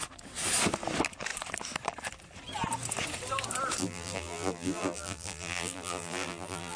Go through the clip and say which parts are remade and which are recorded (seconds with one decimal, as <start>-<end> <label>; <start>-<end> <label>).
0.0-3.8 recorded; 3.8-6.8 remade